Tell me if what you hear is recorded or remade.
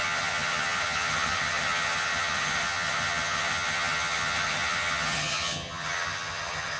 remade